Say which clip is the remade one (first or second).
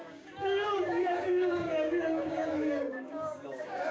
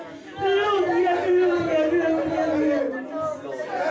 first